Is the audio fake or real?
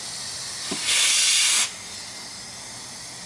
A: real